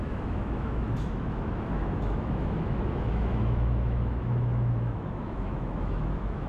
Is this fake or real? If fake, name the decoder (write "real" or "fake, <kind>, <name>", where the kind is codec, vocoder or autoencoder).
fake, autoencoder, DAC-VAE